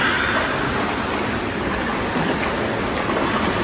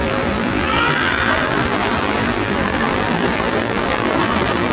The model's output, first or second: second